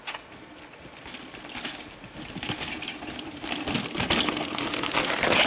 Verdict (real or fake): real